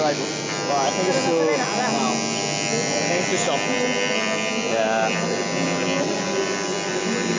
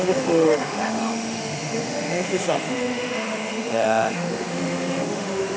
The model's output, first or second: second